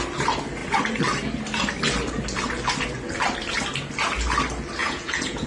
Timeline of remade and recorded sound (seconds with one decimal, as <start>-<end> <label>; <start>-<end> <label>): 0.0-4.8 recorded; 4.8-5.5 remade